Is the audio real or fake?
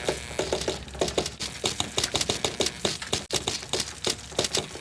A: real